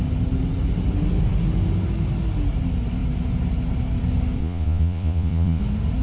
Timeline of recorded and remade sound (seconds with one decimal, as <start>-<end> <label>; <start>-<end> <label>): 0.0-4.4 recorded; 4.4-5.6 remade; 5.6-6.0 recorded